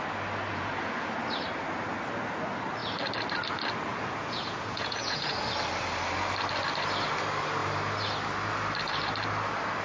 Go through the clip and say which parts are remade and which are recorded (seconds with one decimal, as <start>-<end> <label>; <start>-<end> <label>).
0.0-0.5 recorded; 0.5-1.1 remade; 1.1-3.9 recorded; 3.9-5.4 remade; 5.4-9.8 recorded